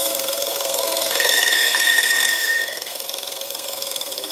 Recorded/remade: remade